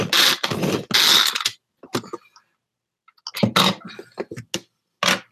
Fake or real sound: real